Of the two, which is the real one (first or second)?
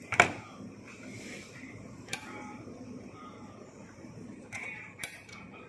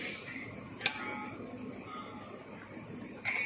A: second